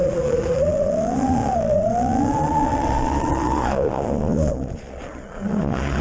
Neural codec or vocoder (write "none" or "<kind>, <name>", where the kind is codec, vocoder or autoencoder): vocoder, Vocos